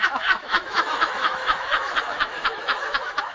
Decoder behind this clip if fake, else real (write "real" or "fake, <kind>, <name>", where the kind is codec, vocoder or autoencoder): fake, autoencoder, DAC-VAE